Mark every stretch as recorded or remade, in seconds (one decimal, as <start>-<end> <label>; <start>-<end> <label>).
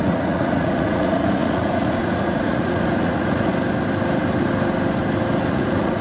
0.0-3.5 remade; 3.5-5.5 recorded; 5.5-6.0 remade